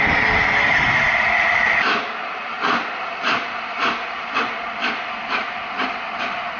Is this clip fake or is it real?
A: real